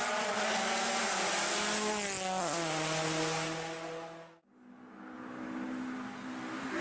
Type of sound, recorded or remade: recorded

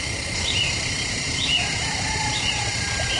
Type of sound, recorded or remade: remade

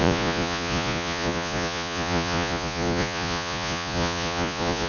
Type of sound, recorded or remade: remade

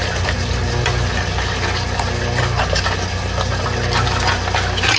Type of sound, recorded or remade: recorded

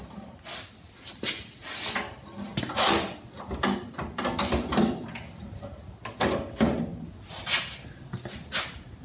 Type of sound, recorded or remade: recorded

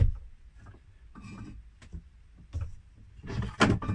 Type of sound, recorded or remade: recorded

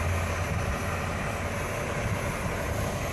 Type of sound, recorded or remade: recorded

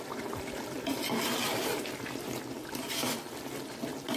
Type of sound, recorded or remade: recorded